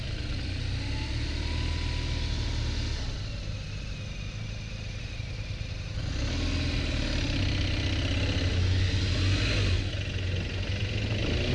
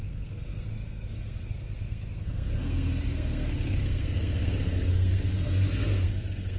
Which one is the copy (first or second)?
second